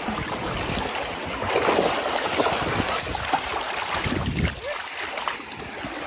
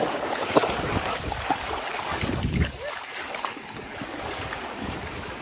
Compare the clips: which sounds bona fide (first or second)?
first